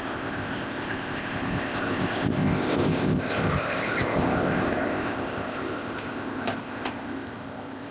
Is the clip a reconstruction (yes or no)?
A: yes